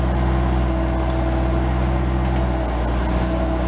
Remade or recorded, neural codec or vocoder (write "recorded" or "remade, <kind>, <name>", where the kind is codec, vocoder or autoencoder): recorded